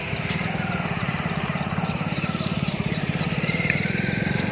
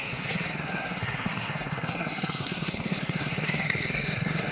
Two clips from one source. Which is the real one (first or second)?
first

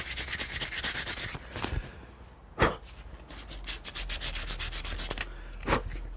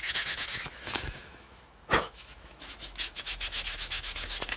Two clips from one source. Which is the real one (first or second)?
first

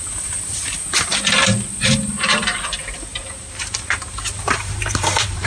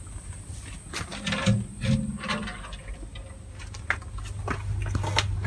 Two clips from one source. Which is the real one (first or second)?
second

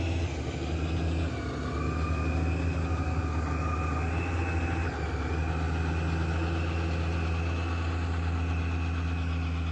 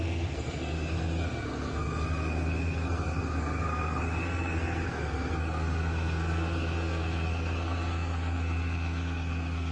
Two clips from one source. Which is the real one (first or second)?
first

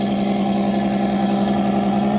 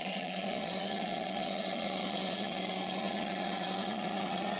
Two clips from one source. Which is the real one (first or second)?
first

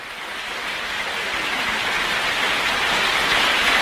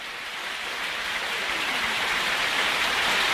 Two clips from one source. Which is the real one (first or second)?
first